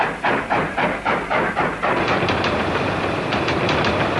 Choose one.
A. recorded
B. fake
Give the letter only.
B